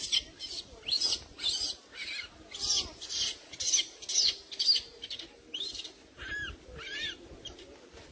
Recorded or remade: recorded